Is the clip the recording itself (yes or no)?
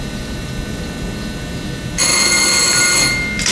yes